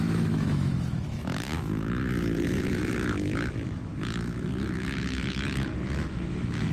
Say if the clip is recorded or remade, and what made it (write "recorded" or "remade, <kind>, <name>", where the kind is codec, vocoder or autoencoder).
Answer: remade, autoencoder, DAC-VAE